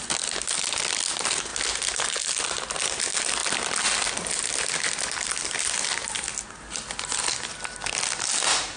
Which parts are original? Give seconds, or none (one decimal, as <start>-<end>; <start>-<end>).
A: 0.0-8.8